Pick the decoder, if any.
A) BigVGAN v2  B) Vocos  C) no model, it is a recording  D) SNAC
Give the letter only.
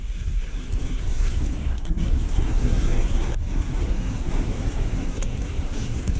D